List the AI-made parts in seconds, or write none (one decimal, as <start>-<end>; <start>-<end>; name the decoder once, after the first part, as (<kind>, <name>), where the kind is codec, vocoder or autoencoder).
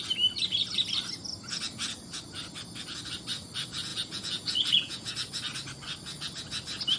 3.9-5.1 (vocoder, Vocos)